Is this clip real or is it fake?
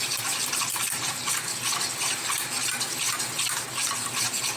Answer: real